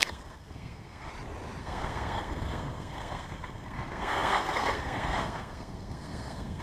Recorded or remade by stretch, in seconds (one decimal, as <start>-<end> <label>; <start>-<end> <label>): 0.0-1.1 remade; 1.1-1.6 recorded; 1.6-6.6 remade